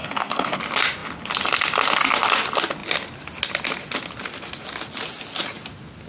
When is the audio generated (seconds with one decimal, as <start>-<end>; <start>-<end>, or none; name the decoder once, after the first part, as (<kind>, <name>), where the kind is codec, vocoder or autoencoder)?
0.0-0.6 (codec, SNAC)